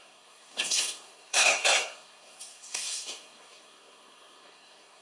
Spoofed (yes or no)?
yes